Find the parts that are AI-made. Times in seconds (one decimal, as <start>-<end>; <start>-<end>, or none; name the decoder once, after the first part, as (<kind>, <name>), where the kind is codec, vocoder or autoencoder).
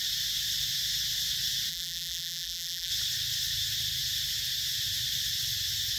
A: 1.7-2.9 (vocoder, BigVGAN v2)